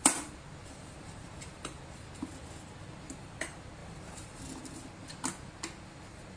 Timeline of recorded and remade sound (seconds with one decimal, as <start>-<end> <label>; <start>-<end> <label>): 0.0-0.6 recorded; 0.6-1.8 remade; 1.8-3.8 recorded; 3.8-4.4 remade; 4.4-6.4 recorded